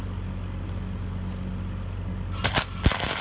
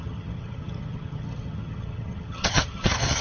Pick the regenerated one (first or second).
second